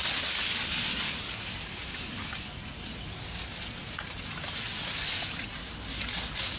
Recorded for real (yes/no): yes